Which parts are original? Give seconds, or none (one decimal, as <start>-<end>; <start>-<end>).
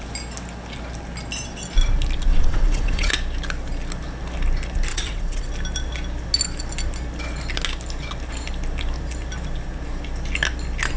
0.0-2.3; 3.1-4.9; 5.5-11.0